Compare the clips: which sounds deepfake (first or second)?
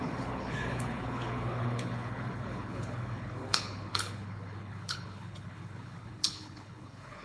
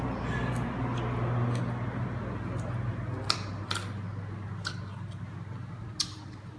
first